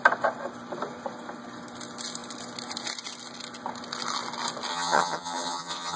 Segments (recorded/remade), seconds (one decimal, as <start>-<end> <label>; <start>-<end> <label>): 0.0-4.7 recorded; 4.7-6.0 remade